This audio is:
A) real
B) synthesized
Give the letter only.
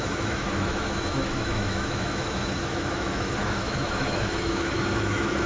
B